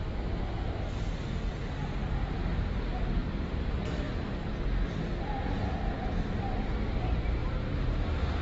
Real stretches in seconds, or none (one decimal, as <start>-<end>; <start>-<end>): 0.0-3.2; 3.7-7.4

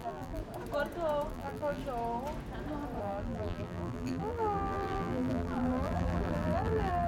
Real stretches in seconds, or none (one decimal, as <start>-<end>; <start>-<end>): 0.4-1.3; 1.8-3.0

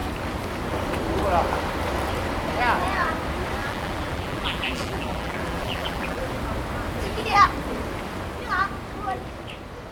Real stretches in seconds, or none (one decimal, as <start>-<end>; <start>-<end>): 0.0-3.6; 6.2-9.9

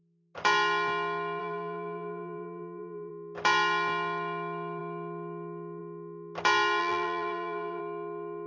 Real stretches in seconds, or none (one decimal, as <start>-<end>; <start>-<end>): 0.0-1.4; 3.1-6.8; 7.8-8.5